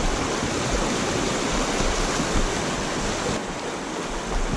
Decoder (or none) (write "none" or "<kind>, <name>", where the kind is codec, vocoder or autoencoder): none